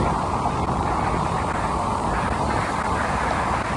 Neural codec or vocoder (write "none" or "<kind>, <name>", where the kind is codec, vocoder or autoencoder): none